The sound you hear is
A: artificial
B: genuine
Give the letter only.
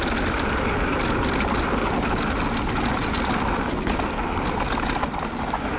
B